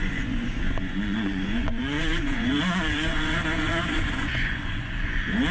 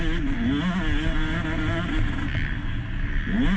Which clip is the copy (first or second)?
first